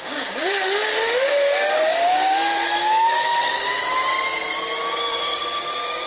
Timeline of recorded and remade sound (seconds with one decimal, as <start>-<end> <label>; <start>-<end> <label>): 0.0-4.5 remade; 4.5-5.0 recorded; 5.0-6.1 remade